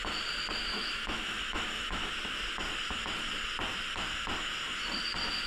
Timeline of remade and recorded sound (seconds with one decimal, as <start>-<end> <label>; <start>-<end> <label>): 0.0-0.7 recorded; 0.7-2.1 remade; 2.1-5.5 recorded